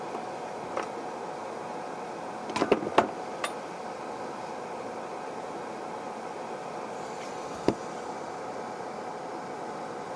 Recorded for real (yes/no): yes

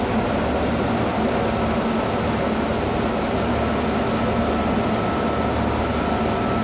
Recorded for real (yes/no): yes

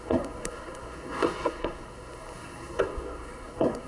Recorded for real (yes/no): no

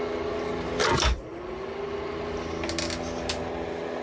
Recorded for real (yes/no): yes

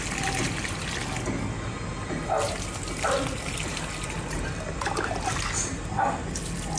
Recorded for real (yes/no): yes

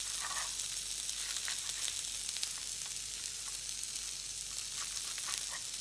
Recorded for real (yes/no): yes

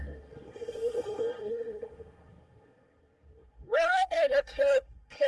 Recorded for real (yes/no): no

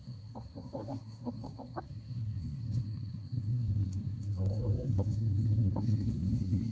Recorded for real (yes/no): no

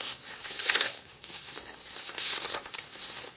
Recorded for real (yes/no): no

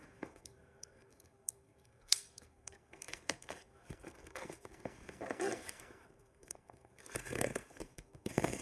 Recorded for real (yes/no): no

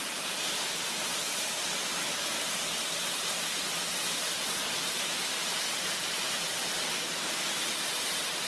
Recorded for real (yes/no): yes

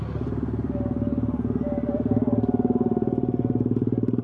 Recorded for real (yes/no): yes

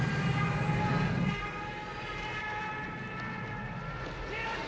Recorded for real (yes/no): yes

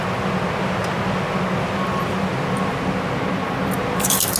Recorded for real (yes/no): yes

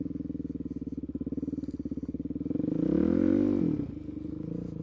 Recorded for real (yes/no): yes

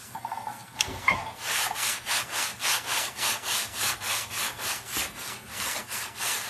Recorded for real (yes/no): no